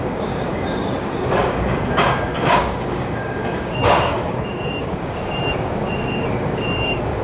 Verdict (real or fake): fake